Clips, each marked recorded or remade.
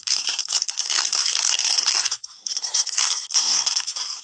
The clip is remade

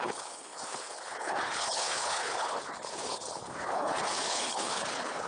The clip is remade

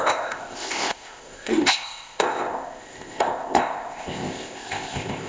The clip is remade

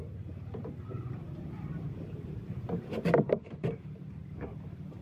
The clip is remade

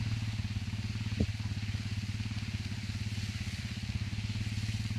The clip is recorded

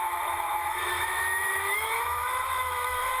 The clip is remade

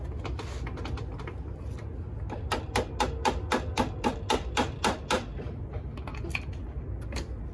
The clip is recorded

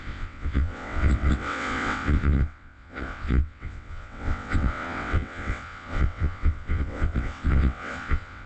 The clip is remade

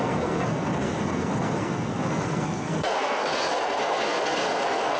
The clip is remade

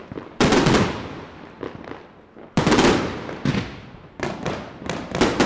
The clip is recorded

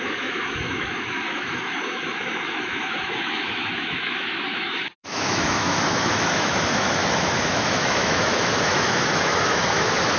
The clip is remade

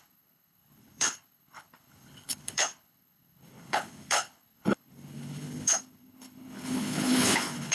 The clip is remade